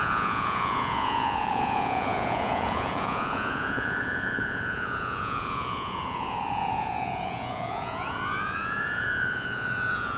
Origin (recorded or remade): remade